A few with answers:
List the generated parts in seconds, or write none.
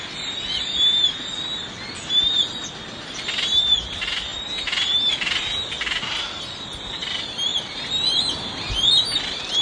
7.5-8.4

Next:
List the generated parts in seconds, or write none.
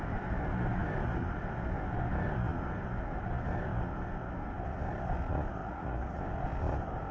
5.6-6.2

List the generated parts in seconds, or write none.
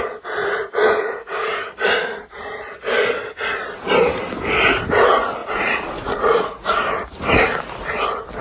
0.4-1.9; 5.4-6.8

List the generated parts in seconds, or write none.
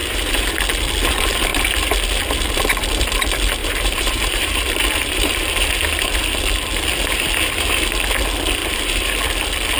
0.0-0.5; 3.6-5.6; 8.6-9.2